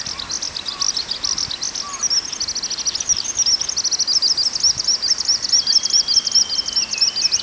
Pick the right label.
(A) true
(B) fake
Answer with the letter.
A